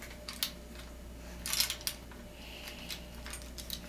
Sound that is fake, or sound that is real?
real